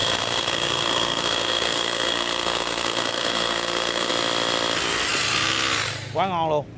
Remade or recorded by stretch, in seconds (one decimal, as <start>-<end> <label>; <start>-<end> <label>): 0.0-4.1 remade; 4.1-6.8 recorded